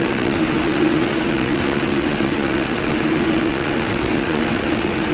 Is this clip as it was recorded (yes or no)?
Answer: no